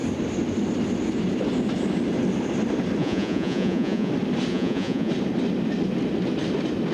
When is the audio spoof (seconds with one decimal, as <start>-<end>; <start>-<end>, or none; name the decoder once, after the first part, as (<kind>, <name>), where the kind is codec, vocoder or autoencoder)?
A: 3.0-4.1 (vocoder, Vocos); 4.5-5.1